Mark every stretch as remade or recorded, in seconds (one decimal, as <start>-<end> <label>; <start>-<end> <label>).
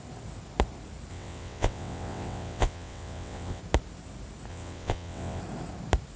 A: 0.0-1.1 recorded; 1.1-3.6 remade; 3.6-4.5 recorded; 4.5-5.4 remade; 5.4-6.2 recorded